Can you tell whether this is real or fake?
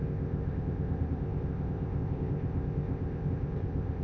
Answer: fake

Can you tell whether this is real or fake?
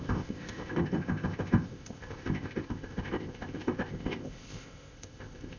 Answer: fake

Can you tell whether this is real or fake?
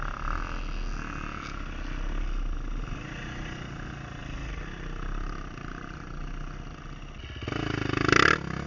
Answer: real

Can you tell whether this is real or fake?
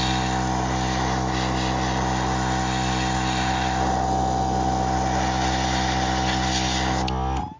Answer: real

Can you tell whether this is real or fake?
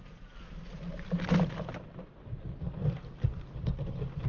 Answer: real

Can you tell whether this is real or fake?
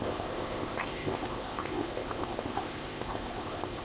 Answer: fake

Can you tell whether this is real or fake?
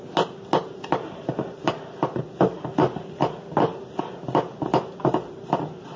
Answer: real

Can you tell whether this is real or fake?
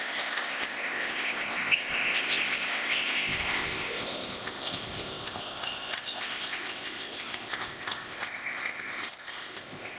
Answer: fake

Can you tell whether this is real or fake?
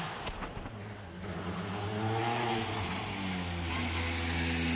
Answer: real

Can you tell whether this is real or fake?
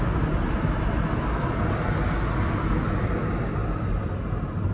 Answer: real